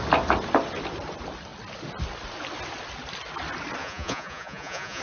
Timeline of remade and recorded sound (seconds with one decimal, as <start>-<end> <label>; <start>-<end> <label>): 0.0-3.8 recorded; 3.8-5.0 remade